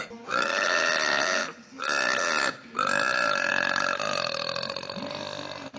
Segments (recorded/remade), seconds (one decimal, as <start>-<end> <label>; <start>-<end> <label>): 0.0-5.8 recorded